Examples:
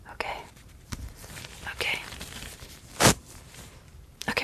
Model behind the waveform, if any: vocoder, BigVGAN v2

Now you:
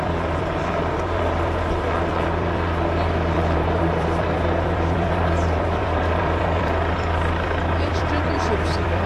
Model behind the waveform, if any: vocoder, BigVGAN v2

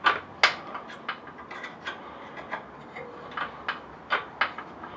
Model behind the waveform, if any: none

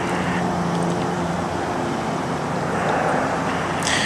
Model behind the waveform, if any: vocoder, BigVGAN v2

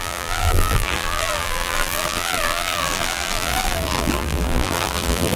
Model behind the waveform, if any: vocoder, BigVGAN v2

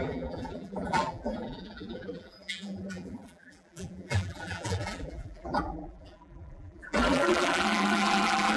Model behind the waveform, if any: vocoder, BigVGAN v2